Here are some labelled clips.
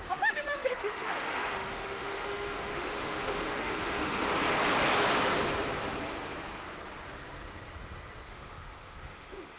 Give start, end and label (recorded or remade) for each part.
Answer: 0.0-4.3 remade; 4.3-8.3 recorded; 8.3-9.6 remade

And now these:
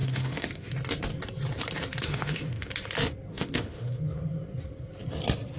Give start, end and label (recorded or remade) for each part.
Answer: 0.0-0.7 remade; 0.7-2.1 recorded; 2.1-2.7 remade; 2.7-3.3 recorded; 3.3-4.0 remade; 4.0-5.6 recorded

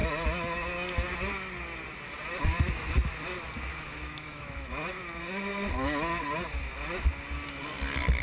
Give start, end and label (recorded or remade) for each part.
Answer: 0.0-3.7 recorded; 3.7-5.0 remade; 5.0-8.2 recorded

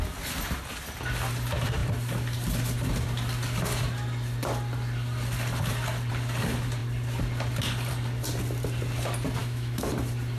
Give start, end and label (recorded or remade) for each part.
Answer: 0.0-9.4 recorded; 9.4-9.9 remade; 9.9-10.4 recorded

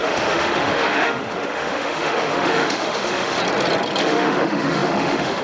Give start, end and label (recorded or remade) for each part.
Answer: 0.0-3.4 remade; 3.4-4.0 recorded; 4.0-5.4 remade

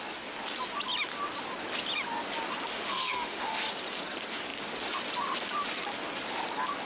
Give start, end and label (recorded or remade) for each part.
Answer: 0.0-2.7 recorded; 2.7-3.7 remade; 3.7-6.9 recorded

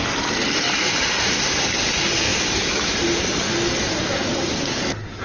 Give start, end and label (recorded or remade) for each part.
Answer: 0.0-2.3 recorded; 2.3-2.9 remade; 2.9-5.2 recorded